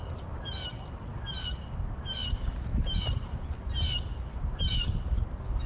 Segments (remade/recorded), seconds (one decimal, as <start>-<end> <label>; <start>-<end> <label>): 0.0-5.7 recorded